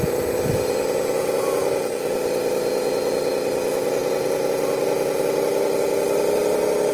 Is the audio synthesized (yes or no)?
no